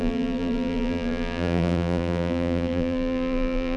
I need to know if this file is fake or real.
fake